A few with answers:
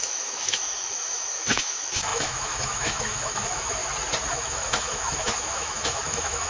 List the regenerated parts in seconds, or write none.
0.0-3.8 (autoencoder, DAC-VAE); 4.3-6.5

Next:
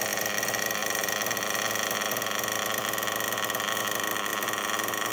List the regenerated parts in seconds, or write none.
none